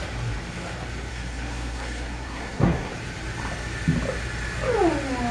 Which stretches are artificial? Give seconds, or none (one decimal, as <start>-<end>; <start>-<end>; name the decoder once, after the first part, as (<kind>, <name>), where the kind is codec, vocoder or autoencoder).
1.1-2.9 (codec, SNAC)